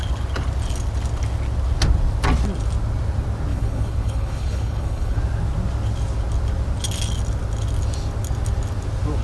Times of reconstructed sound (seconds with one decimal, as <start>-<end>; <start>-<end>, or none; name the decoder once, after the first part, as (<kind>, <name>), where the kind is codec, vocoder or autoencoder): 3.5-5.2 (codec, HILCodec)